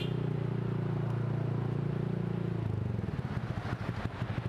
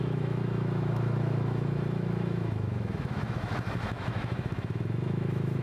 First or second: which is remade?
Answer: second